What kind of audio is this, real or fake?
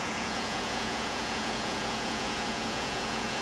fake